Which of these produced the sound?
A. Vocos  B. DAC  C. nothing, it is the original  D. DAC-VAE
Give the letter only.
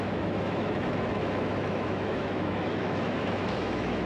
D